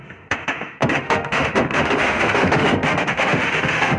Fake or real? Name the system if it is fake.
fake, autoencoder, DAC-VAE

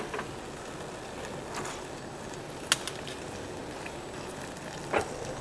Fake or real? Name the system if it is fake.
real